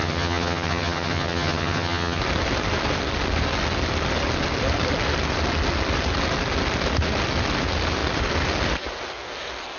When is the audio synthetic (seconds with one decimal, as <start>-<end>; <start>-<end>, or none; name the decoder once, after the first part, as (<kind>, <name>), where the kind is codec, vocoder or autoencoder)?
0.0-2.2 (vocoder, HiFi-GAN)